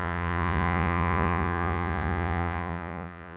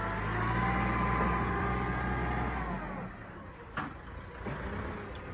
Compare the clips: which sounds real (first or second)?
second